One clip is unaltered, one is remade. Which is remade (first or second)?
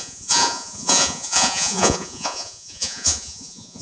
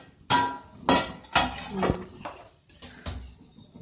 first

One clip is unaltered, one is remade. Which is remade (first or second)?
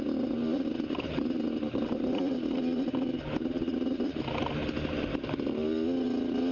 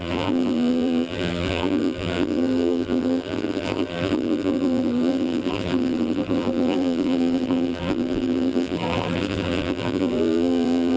second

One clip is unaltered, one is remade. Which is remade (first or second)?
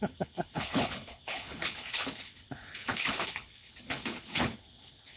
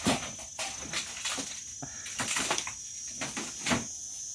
first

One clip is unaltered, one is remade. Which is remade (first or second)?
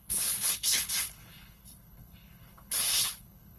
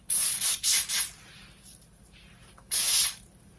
first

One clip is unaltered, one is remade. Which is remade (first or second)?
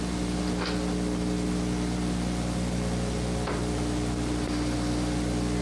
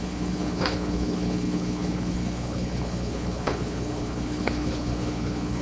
second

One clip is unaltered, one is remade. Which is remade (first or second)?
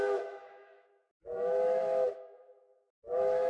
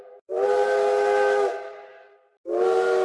first